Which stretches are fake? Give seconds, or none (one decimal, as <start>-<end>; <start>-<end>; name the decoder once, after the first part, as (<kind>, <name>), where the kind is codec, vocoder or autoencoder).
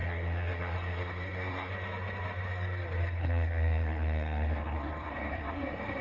0.0-1.7 (codec, SNAC); 3.2-6.0